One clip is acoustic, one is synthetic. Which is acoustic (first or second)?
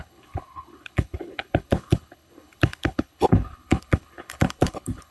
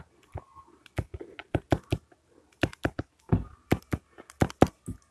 second